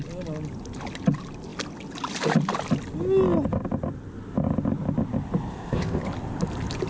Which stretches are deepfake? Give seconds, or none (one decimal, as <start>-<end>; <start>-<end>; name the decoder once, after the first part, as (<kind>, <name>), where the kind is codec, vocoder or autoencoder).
5.5-6.0 (codec, ZipCodec)

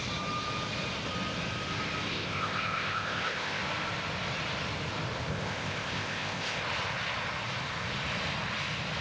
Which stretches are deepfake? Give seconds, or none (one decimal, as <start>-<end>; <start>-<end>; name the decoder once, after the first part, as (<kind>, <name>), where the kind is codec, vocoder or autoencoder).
2.1-3.6 (codec, ZipCodec); 5.3-6.6